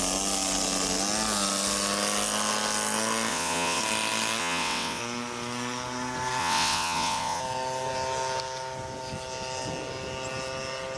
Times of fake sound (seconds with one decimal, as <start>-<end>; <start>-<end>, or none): 3.3-3.8; 4.4-5.0; 6.4-7.4